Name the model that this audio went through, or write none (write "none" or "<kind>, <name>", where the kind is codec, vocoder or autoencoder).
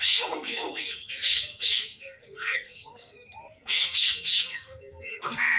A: codec, SNAC